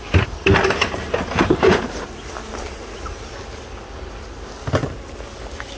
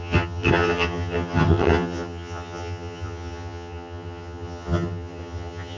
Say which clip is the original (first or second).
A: first